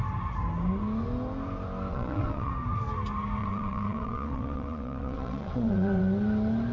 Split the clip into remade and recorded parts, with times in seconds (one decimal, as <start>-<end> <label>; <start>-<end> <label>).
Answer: 0.0-1.9 recorded; 1.9-2.5 remade; 2.5-3.4 recorded; 3.4-6.0 remade; 6.0-6.7 recorded